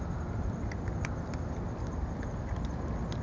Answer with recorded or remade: recorded